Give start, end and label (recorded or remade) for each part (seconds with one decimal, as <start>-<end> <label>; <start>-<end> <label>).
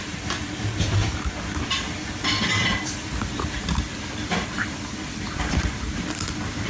0.0-1.0 recorded; 1.0-1.8 remade; 1.8-2.6 recorded; 2.6-6.7 remade